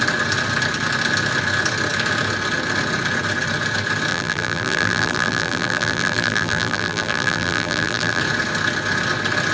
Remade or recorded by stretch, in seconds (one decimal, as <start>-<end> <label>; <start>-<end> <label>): 0.0-4.1 recorded; 4.1-8.2 remade; 8.2-9.5 recorded